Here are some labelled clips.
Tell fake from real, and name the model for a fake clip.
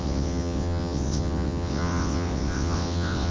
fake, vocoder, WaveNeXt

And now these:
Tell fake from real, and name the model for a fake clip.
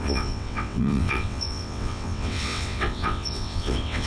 fake, vocoder, WaveNeXt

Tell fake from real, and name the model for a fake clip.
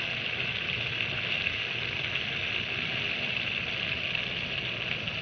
real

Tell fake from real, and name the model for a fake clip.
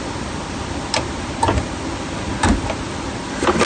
real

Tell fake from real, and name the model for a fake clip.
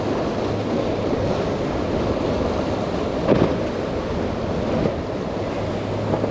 real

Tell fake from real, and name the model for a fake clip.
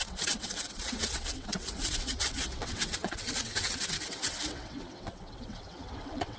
fake, vocoder, WaveNeXt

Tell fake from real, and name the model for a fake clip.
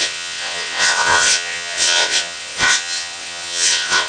fake, vocoder, WaveNeXt